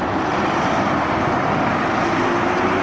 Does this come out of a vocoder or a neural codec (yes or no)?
no